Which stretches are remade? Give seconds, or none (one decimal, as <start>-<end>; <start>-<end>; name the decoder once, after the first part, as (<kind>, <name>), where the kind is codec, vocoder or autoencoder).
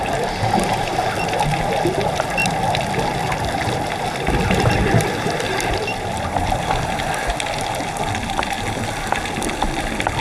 2.4-6.6 (vocoder, BigVGAN v2)